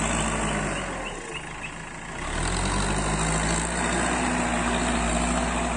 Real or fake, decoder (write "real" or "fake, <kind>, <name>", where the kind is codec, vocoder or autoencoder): real